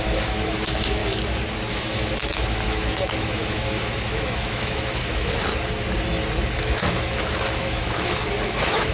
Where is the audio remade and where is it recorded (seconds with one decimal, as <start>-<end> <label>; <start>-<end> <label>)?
0.0-1.0 remade; 1.0-1.7 recorded; 1.7-5.5 remade; 5.5-6.6 recorded; 6.6-8.9 remade